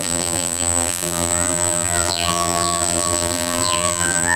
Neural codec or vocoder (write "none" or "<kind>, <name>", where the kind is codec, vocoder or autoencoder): vocoder, BigVGAN v2